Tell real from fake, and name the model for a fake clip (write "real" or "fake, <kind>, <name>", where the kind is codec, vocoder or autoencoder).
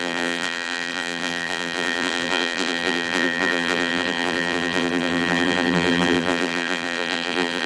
fake, vocoder, BigVGAN v2